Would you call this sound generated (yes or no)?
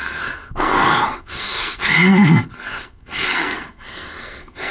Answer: yes